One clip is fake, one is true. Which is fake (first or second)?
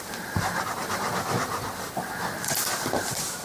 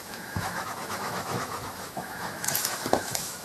second